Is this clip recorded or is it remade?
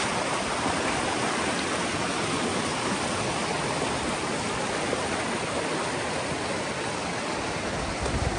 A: recorded